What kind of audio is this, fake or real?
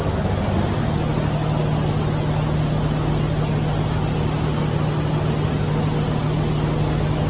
real